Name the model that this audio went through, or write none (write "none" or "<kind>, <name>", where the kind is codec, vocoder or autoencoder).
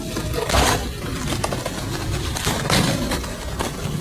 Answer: none